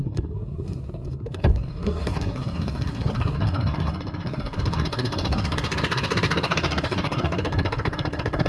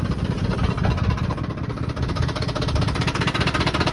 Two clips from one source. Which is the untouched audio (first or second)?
second